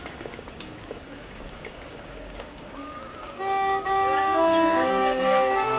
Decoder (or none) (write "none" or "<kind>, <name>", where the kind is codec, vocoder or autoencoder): codec, DAC